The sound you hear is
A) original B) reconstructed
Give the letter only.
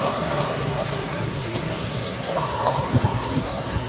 B